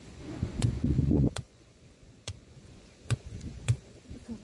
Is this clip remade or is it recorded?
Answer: remade